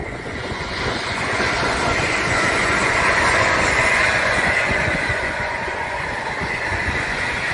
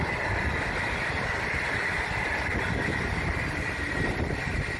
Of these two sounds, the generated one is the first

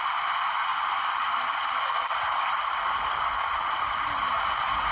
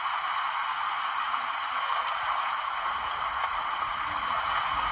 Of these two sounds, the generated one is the second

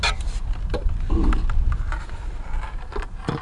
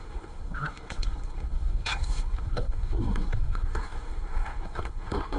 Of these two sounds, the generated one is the second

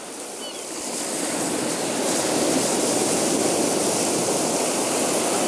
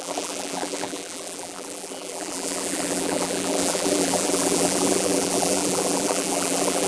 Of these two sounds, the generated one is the second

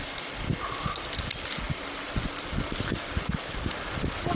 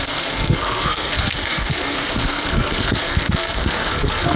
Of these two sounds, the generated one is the second